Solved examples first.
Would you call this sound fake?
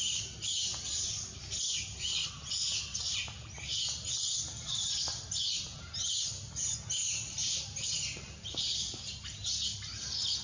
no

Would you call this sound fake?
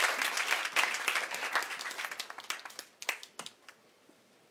no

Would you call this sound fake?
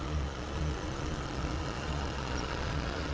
yes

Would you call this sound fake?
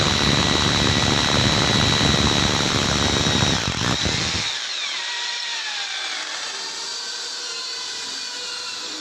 no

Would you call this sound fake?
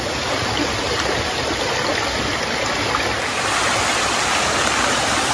no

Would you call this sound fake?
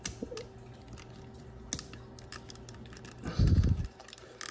no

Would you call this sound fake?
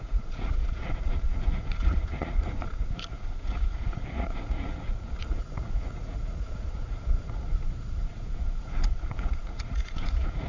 yes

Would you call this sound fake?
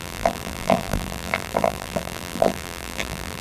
yes